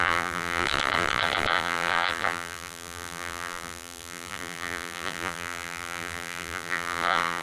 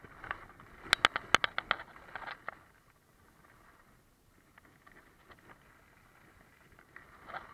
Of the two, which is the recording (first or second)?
second